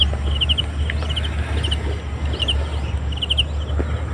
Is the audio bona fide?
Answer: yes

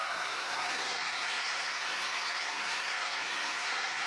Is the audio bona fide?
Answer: no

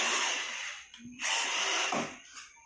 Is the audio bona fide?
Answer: yes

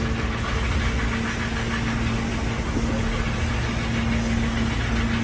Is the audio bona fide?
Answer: yes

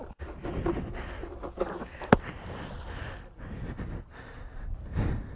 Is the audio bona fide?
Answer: yes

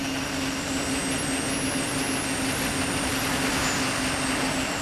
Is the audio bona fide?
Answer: yes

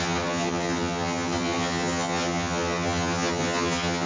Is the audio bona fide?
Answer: no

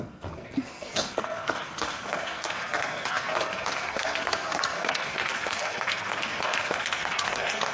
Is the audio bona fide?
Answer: no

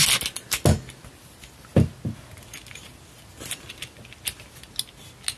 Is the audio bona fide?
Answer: yes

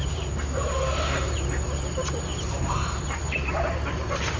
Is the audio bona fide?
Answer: no